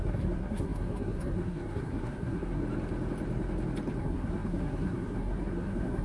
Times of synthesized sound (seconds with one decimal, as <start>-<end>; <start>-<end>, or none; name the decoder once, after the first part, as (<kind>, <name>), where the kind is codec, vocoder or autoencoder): 0.0-2.6 (codec, SNAC); 4.0-6.0